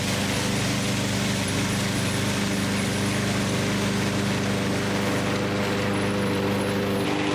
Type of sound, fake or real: real